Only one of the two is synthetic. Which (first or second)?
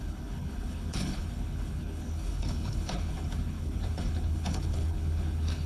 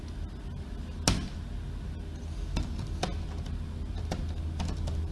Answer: first